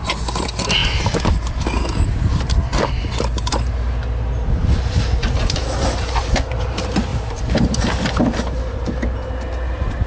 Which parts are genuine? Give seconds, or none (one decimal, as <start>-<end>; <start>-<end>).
0.0-7.1; 7.7-10.1